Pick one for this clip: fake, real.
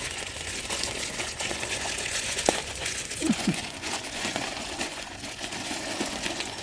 fake